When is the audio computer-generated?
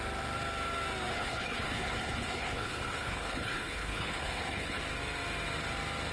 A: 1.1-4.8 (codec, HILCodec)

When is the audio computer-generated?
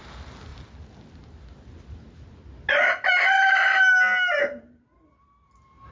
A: none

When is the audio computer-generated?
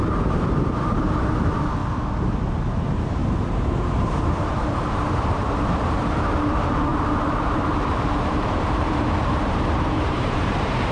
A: 0.0-1.8 (vocoder, BigVGAN v2); 2.8-10.9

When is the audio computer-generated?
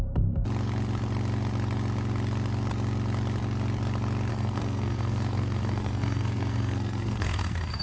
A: 4.3-7.8 (codec, SNAC)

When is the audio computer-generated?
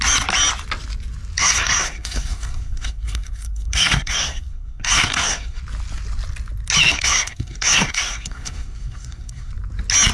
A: 1.4-5.6 (codec, SNAC); 6.9-9.5